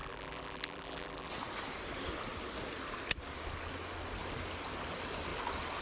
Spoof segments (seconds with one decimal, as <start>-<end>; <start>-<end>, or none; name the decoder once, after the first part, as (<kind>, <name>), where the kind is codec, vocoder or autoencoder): 0.0-1.3 (vocoder, BigVGAN v2)